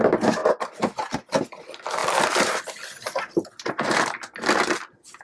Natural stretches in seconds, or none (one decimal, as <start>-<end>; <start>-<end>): 0.0-0.4; 1.1-2.0